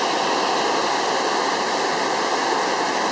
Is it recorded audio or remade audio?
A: recorded